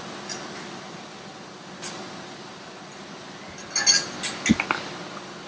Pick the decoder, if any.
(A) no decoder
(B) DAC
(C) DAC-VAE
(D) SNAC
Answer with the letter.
A